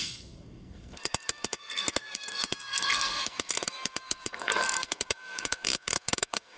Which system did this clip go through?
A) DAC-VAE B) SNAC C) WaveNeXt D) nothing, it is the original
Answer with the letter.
B